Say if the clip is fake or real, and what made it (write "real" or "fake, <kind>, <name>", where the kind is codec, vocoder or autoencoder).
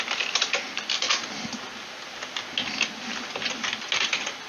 real